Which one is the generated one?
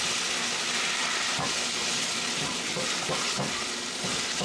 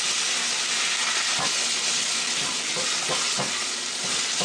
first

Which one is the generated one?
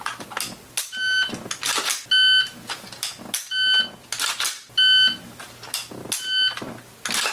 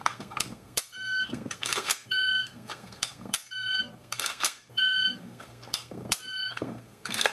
second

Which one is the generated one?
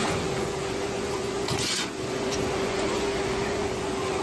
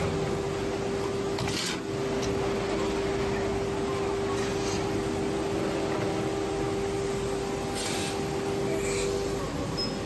first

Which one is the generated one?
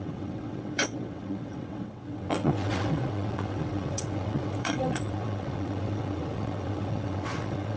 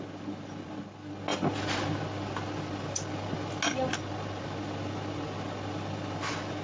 first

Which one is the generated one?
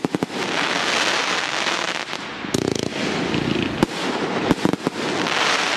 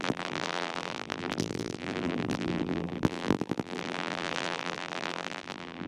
second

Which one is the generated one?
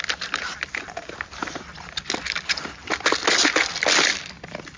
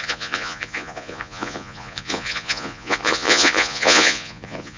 second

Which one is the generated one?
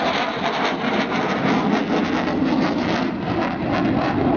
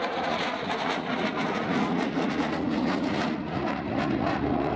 second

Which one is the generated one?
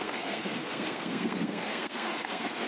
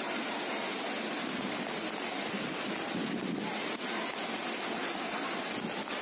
first